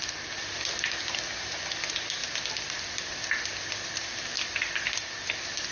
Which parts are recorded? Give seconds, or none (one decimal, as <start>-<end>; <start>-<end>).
0.0-2.2